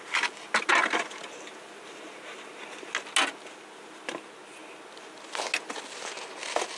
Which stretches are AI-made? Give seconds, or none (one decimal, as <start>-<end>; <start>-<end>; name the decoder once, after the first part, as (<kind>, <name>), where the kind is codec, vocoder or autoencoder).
none